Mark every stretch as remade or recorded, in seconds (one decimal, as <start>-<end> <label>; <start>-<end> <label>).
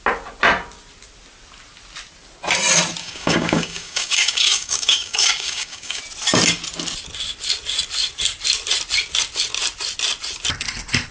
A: 0.0-3.0 recorded; 3.0-6.0 remade; 6.0-11.1 recorded